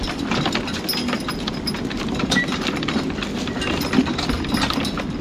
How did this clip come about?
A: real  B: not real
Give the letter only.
A